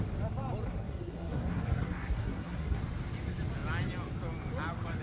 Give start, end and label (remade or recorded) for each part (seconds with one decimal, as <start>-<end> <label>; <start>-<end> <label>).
0.0-0.7 recorded; 0.7-2.8 remade; 2.8-5.0 recorded